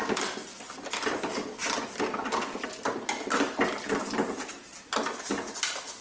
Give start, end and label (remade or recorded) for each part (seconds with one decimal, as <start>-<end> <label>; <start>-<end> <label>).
0.0-6.0 recorded

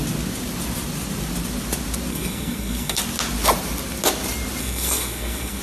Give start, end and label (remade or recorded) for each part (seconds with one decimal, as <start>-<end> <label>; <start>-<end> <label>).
0.0-2.1 recorded; 2.1-3.0 remade; 3.0-4.6 recorded; 4.6-5.6 remade

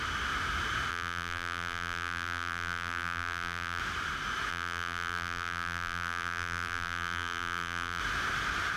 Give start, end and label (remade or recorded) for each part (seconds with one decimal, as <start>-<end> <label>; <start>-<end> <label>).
0.0-0.9 recorded; 0.9-3.8 remade; 3.8-4.5 recorded; 4.5-8.0 remade; 8.0-8.8 recorded

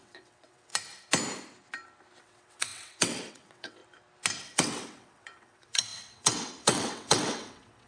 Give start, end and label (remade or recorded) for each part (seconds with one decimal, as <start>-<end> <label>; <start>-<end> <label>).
0.0-0.7 remade; 0.7-2.2 recorded; 2.2-3.8 remade; 3.8-4.4 recorded; 4.4-7.9 remade

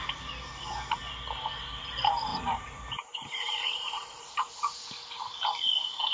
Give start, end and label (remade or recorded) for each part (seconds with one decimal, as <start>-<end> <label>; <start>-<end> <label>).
0.0-2.3 recorded; 2.3-4.5 remade; 4.5-6.1 recorded

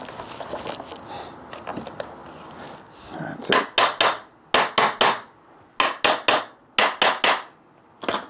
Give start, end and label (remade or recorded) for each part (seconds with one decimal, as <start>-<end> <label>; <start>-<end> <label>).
0.0-8.3 recorded